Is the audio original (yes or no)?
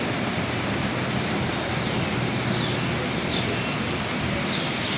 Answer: yes